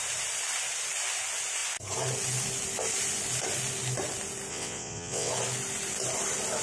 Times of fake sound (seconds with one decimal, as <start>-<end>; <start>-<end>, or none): 4.5-5.3